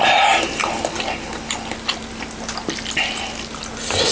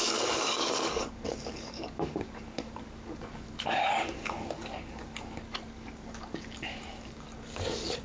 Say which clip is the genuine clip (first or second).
first